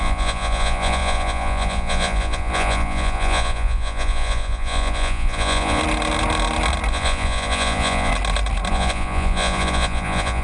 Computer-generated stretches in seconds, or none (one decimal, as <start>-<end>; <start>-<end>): 0.0-5.8; 6.9-8.1; 8.7-10.4